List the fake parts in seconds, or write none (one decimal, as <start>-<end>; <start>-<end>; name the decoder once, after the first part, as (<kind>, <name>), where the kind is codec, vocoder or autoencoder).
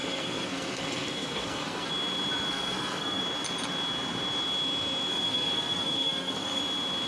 0.0-1.9 (codec, SNAC); 2.5-3.2; 5.1-6.6